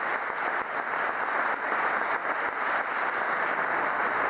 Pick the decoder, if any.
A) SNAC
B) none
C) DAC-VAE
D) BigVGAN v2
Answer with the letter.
B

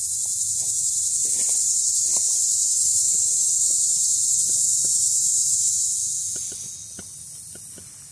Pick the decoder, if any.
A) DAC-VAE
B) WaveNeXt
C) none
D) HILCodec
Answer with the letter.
C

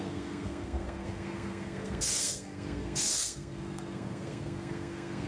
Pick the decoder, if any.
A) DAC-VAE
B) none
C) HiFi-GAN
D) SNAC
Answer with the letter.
D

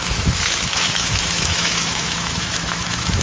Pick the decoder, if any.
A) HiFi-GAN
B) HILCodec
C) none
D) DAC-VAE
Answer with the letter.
D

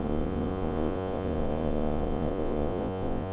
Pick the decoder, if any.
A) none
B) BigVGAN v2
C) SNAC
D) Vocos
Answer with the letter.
D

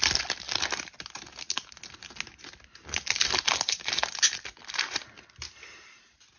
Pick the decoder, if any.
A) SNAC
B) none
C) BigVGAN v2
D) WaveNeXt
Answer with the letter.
B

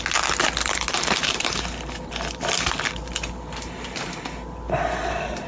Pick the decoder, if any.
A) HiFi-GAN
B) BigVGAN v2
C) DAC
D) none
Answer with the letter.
D